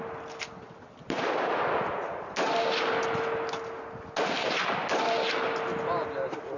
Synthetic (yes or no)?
no